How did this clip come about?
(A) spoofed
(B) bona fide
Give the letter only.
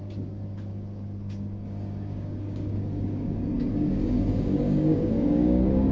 A